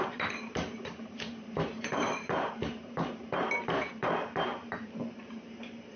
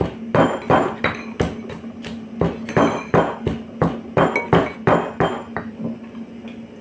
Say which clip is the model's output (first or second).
first